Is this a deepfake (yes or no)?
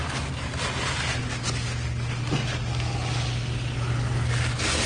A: no